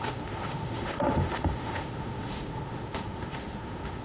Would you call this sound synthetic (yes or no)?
yes